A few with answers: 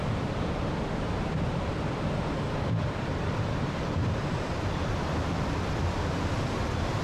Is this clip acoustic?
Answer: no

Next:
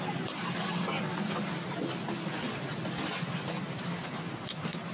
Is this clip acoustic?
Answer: yes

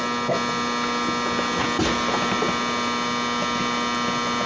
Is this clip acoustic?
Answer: yes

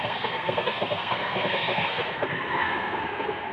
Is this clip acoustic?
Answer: no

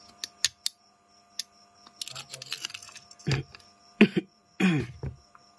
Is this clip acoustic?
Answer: yes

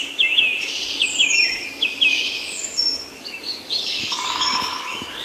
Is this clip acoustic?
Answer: no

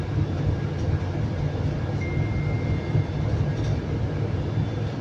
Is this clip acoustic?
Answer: yes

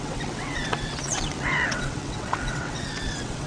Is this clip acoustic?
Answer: no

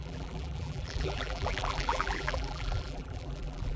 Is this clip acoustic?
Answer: no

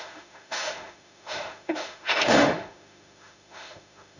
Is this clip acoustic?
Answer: no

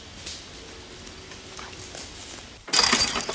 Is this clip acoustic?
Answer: yes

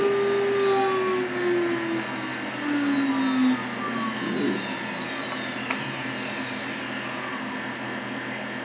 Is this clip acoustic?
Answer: yes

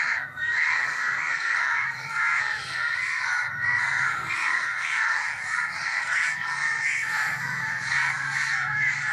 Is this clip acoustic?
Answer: no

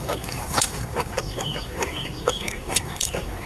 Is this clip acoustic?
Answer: no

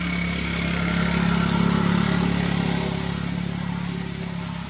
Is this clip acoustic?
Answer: yes